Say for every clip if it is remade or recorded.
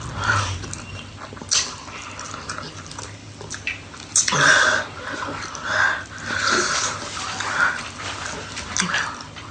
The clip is recorded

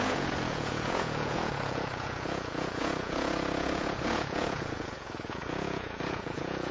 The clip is remade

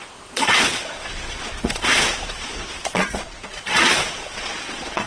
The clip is remade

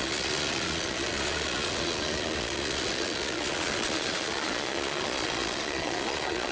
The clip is remade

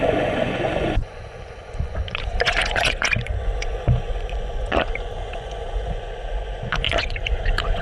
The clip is remade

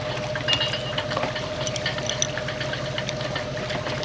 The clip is recorded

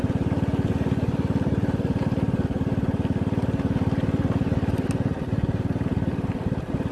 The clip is recorded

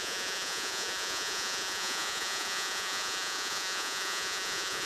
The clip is remade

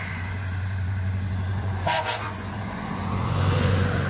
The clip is remade